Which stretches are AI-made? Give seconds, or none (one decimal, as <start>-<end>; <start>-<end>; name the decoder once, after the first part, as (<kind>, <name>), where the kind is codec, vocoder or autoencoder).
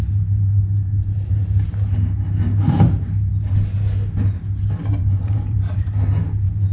4.8-5.9 (vocoder, BigVGAN v2)